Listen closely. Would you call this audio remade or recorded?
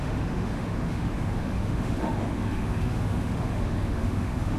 remade